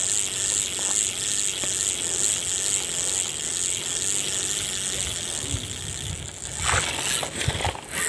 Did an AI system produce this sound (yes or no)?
no